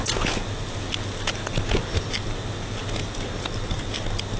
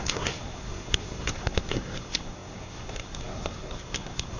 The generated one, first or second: second